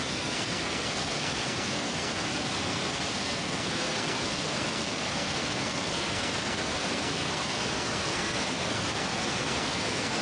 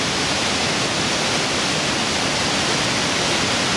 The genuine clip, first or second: second